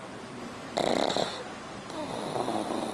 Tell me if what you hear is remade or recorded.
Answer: recorded